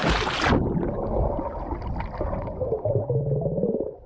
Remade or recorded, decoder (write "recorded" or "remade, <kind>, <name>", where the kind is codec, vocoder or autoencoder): recorded